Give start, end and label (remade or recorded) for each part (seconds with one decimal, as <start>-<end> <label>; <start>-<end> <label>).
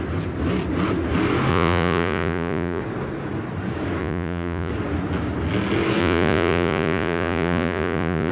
0.0-1.5 recorded; 1.5-2.8 remade; 2.8-4.0 recorded; 4.0-4.7 remade; 4.7-6.0 recorded; 6.0-8.3 remade